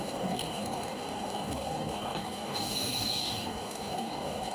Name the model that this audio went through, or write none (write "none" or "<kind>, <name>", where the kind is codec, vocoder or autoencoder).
codec, DAC